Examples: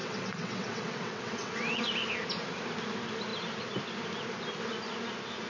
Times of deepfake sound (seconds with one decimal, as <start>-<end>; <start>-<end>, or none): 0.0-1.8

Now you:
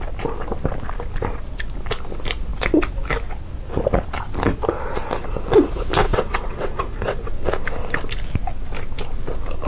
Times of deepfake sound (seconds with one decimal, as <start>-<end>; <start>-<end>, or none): 6.0-7.3

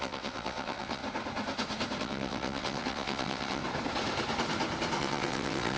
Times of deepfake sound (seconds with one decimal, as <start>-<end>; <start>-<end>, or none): 0.0-1.0; 2.0-3.6; 5.0-5.8

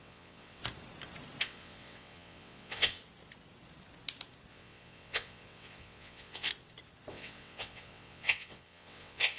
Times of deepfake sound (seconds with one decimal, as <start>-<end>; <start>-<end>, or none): 0.0-0.6; 1.4-3.0; 4.5-6.5; 7.1-9.4

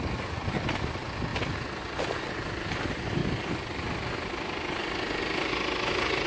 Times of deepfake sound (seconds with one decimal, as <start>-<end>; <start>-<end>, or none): none